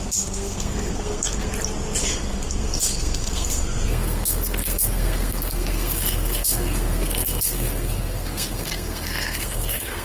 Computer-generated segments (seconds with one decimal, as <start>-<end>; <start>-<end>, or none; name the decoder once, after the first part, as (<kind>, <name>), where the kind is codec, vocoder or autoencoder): 0.0-1.5 (codec, SNAC); 2.0-10.0

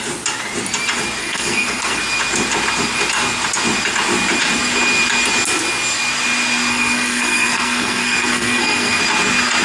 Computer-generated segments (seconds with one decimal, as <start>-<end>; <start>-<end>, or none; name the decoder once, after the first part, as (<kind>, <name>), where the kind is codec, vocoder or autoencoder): 1.2-2.0 (codec, SNAC); 6.7-9.0

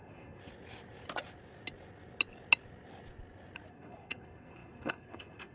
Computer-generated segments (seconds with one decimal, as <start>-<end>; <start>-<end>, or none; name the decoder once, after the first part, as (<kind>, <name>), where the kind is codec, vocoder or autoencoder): 0.0-0.4 (codec, SNAC); 3.7-5.5